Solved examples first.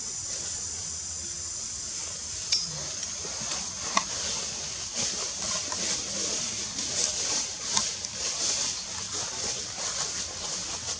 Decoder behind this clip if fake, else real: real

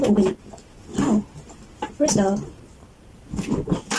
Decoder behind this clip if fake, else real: real